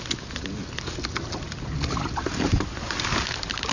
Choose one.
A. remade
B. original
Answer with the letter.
B